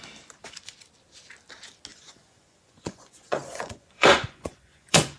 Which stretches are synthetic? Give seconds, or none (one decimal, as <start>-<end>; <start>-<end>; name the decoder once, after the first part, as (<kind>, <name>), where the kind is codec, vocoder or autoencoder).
1.9-5.2 (vocoder, Vocos)